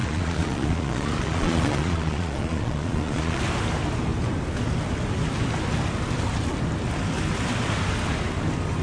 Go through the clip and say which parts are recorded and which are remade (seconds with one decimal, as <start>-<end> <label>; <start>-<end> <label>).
0.0-3.4 remade; 3.4-8.8 recorded